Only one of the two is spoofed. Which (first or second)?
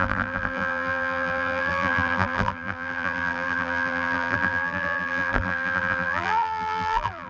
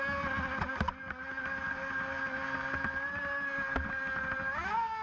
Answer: first